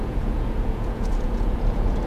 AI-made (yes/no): yes